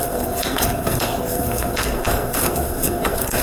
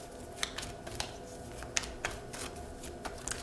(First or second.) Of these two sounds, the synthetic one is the first